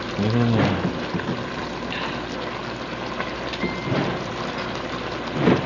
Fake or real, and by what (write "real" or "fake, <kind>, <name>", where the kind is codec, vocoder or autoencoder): real